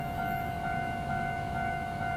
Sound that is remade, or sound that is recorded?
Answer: remade